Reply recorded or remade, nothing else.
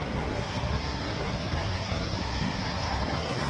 remade